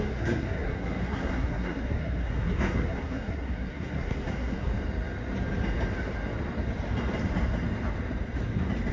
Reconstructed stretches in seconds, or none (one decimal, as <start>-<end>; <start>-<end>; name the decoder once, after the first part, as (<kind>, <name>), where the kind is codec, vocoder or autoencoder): 0.0-4.7 (codec, SNAC)